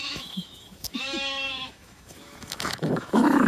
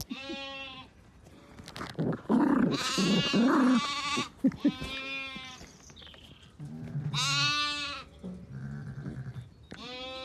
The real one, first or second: second